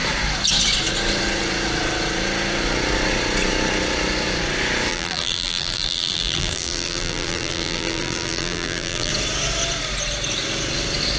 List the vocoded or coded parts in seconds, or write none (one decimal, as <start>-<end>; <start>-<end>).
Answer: 4.9-9.1